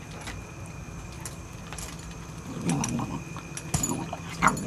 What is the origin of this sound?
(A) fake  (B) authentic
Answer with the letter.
B